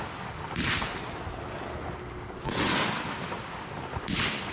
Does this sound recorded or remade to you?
recorded